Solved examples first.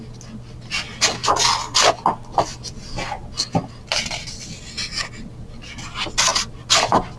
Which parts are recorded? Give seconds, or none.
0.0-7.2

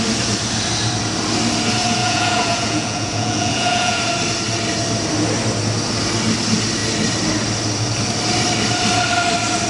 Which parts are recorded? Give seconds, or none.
0.0-2.0; 4.0-9.7